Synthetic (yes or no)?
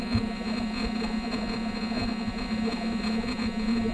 yes